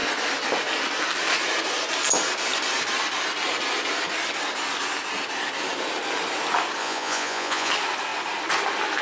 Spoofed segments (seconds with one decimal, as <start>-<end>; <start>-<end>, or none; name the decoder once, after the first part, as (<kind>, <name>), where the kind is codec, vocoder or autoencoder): 6.8-7.7 (vocoder, Vocos)